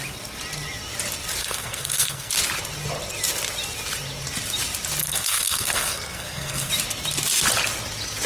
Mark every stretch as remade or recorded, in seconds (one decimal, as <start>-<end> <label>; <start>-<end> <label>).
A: 0.0-1.4 recorded; 1.4-2.3 remade; 2.3-5.0 recorded; 5.0-6.7 remade; 6.7-8.3 recorded